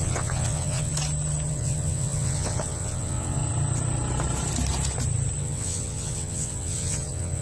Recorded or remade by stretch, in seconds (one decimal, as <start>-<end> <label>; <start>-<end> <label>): 0.0-0.9 remade; 0.9-1.5 recorded; 1.5-3.4 remade; 3.4-5.4 recorded; 5.4-7.4 remade

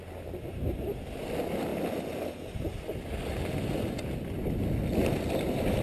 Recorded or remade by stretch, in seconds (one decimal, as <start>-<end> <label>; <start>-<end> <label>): 0.0-5.8 recorded

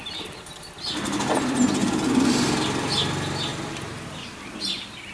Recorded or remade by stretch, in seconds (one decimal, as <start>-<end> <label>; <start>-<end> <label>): 0.0-1.8 recorded; 1.8-2.3 remade; 2.3-3.5 recorded; 3.5-4.6 remade; 4.6-5.1 recorded

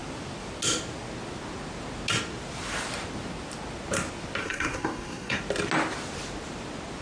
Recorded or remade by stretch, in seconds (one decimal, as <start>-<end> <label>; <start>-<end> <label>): 0.0-4.4 recorded; 4.4-5.4 remade; 5.4-7.0 recorded

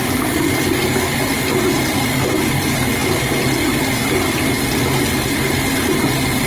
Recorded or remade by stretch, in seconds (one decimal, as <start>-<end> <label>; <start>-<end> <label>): 0.0-6.5 recorded